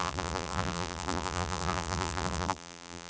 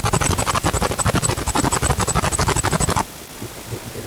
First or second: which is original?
second